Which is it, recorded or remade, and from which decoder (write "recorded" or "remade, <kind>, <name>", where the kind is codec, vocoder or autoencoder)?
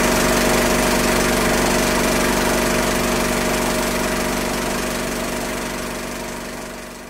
recorded